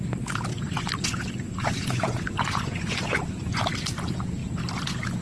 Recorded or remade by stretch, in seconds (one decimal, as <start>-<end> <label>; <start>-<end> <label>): 0.0-0.5 recorded; 0.5-3.6 remade; 3.6-5.2 recorded